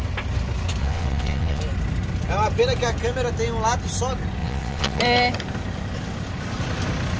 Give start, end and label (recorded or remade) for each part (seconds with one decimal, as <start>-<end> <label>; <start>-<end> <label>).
0.0-0.8 recorded; 0.8-1.6 remade; 1.6-4.4 recorded; 4.4-5.0 remade; 5.0-7.2 recorded